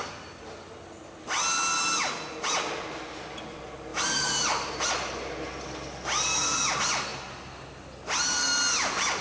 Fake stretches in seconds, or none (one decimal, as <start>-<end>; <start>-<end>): 3.9-4.9